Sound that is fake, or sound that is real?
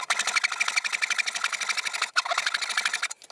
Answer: real